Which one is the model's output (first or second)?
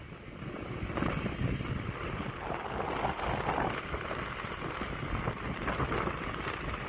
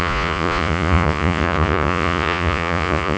second